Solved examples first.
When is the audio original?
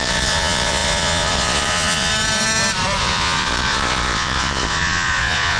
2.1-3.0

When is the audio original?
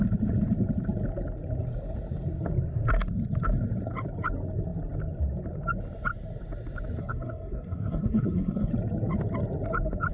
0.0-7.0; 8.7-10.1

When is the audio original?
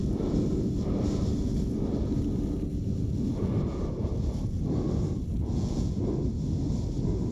0.0-5.3; 6.0-7.3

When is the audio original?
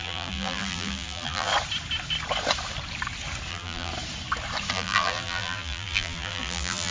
1.5-3.5; 3.9-4.7